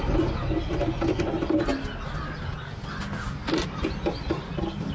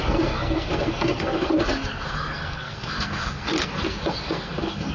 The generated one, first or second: second